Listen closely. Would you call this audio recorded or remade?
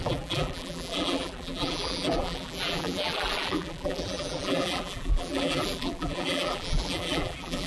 remade